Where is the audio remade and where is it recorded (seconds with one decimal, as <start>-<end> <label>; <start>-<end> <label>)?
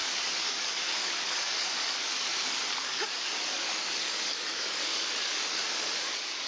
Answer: 0.0-6.5 remade